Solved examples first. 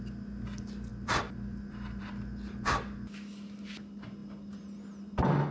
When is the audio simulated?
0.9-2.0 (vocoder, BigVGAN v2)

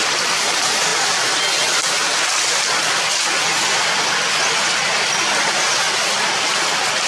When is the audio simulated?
none

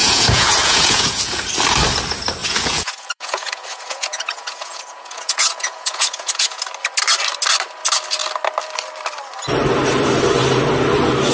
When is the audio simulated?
0.0-1.5 (vocoder, Vocos); 2.4-6.6

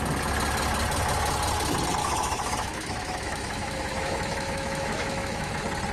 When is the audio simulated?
2.0-5.5 (autoencoder, DAC-VAE)

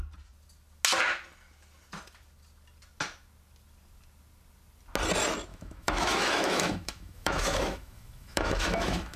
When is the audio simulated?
5.5-9.2 (autoencoder, DAC-VAE)